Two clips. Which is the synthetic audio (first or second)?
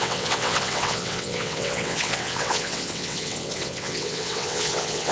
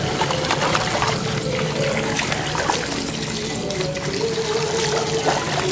first